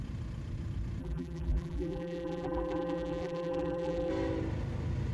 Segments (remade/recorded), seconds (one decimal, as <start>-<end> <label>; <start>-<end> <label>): 0.0-1.0 recorded; 1.0-4.1 remade; 4.1-5.1 recorded